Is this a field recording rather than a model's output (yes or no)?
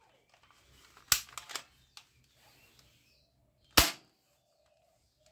yes